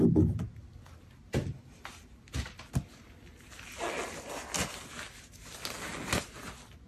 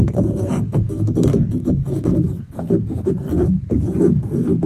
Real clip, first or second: first